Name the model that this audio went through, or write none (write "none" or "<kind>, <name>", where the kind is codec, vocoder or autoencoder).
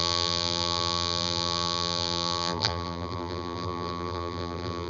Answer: vocoder, BigVGAN v2